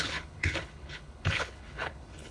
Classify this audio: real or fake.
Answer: fake